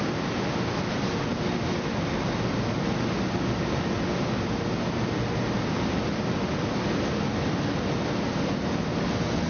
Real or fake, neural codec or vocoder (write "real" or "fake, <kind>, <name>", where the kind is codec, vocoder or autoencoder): real